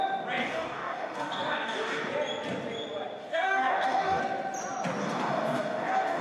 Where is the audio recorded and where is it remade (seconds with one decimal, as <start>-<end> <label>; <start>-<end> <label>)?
0.0-0.4 recorded; 0.4-2.1 remade; 2.1-3.2 recorded; 3.2-4.2 remade; 4.2-5.0 recorded; 5.0-6.2 remade